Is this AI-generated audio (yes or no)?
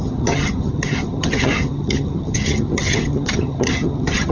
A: yes